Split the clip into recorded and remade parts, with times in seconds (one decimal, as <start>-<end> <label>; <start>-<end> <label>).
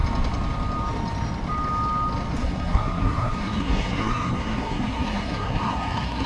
0.0-2.4 recorded; 2.4-6.3 remade